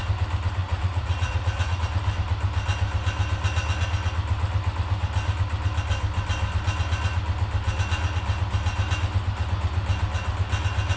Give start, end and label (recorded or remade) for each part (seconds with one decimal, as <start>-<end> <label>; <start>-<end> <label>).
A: 0.0-0.6 recorded; 0.6-1.8 remade; 1.8-11.0 recorded